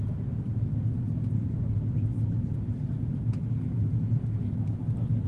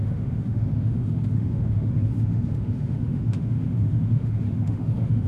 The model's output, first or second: second